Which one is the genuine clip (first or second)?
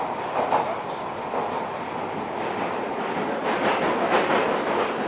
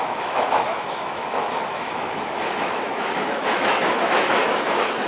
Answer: first